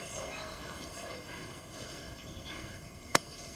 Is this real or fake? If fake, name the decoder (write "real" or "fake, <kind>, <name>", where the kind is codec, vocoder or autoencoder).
fake, codec, SNAC